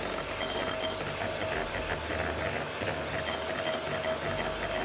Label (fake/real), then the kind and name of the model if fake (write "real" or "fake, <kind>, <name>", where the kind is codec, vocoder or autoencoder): real